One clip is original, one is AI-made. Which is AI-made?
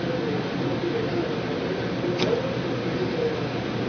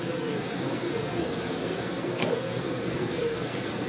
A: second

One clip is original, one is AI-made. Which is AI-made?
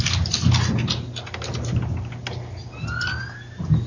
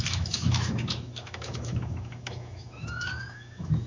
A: second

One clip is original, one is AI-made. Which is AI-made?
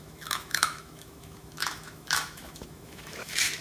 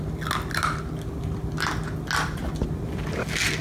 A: first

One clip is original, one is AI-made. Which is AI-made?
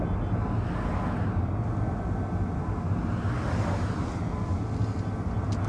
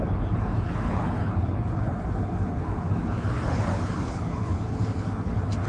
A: second